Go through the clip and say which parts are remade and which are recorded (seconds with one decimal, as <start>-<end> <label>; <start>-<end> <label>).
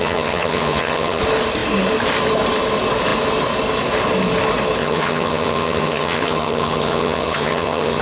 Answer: 0.0-1.2 remade; 1.2-4.8 recorded; 4.8-8.0 remade